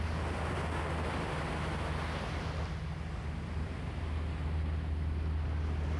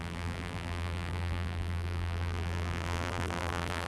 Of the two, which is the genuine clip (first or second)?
first